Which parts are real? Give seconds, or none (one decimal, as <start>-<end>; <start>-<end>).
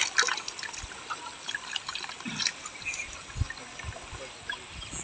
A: 0.0-5.0